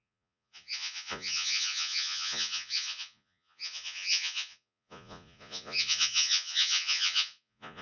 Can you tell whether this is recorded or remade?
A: remade